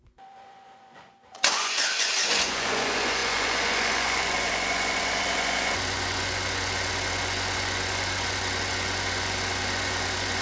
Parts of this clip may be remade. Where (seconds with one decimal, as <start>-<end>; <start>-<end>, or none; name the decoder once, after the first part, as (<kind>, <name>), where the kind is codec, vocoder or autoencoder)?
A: 0.0-10.4 (vocoder, Vocos)